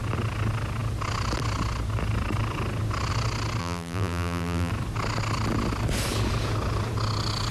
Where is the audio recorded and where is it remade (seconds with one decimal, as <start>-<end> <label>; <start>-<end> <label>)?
0.0-3.6 recorded; 3.6-4.7 remade; 4.7-7.5 recorded